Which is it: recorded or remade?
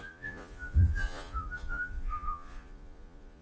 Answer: remade